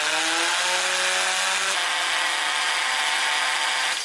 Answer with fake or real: real